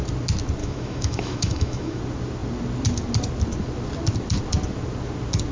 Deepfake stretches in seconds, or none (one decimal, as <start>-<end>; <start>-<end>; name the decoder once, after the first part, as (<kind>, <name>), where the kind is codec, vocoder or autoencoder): 0.6-2.0 (autoencoder, DAC-VAE)